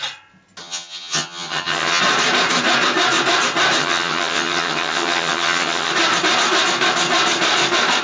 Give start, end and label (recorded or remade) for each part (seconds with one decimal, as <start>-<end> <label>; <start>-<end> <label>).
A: 0.0-0.6 recorded; 0.6-2.0 remade; 2.0-3.8 recorded; 3.8-5.9 remade; 5.9-8.0 recorded